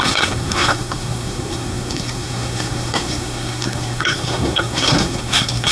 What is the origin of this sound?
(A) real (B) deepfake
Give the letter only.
B